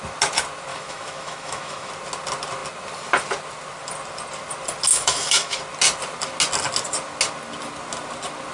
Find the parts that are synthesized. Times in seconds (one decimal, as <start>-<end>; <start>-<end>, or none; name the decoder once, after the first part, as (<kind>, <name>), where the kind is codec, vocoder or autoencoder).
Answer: 0.7-1.9 (autoencoder, DAC-VAE); 4.9-5.6